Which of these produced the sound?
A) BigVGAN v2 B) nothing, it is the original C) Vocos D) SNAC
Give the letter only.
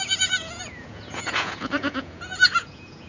C